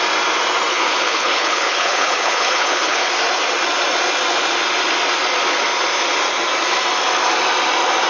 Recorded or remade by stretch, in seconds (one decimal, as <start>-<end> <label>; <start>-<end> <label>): 0.0-0.7 recorded; 0.7-3.1 remade; 3.1-8.1 recorded